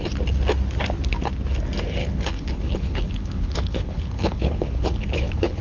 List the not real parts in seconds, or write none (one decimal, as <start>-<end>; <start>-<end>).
2.0-5.6